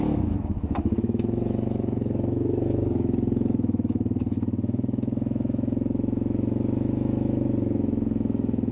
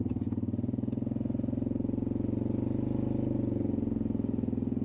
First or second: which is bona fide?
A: second